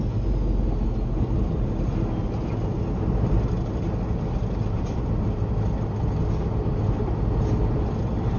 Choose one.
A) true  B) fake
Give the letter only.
A